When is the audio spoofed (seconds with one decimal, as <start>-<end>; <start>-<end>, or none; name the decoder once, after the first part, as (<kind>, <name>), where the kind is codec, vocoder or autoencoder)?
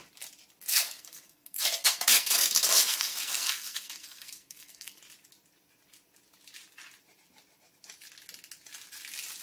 0.7-5.0 (codec, SNAC)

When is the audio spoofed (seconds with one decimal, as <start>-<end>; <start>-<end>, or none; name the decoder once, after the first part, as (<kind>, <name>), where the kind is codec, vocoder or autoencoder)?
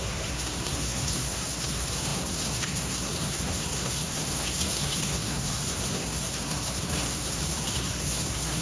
0.0-8.6 (codec, SNAC)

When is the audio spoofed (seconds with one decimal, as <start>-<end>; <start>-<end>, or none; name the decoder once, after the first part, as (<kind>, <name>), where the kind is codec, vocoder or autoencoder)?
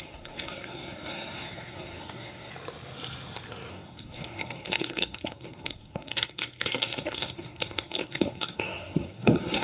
0.0-2.5 (codec, SNAC); 3.7-9.6